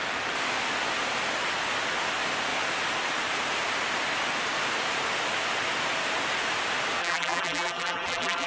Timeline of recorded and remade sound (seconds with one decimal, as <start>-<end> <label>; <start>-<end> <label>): 0.0-7.0 recorded; 7.0-8.5 remade